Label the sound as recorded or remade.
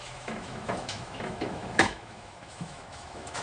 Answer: remade